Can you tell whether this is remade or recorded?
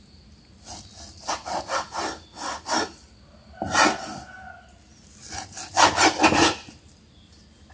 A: recorded